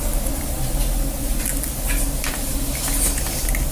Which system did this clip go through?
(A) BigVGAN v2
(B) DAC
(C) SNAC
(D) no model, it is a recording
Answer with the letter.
D